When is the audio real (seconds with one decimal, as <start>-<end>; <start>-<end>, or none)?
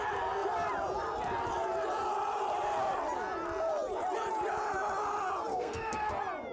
0.0-5.5; 6.1-6.5